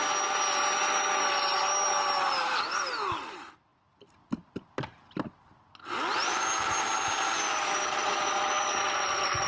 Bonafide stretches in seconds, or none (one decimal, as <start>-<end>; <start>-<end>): 0.0-7.9